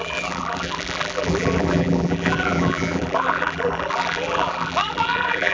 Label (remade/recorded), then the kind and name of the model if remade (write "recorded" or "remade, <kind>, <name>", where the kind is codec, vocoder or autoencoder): remade, vocoder, BigVGAN v2